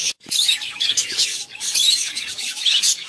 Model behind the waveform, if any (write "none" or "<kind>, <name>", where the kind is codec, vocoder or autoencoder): codec, DAC